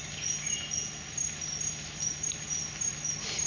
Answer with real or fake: real